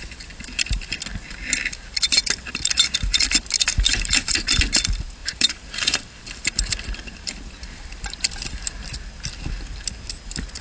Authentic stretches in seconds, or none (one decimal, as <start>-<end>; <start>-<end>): 0.0-3.7; 4.6-5.2; 6.2-10.6